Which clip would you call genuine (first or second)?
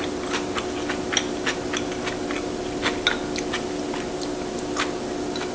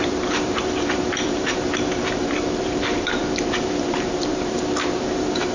first